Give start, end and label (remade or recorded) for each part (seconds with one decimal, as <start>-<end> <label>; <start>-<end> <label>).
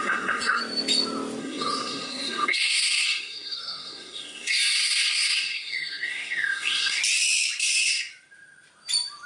0.0-0.6 remade; 0.6-1.4 recorded; 1.4-7.0 remade; 7.0-7.6 recorded; 7.6-8.1 remade; 8.1-9.3 recorded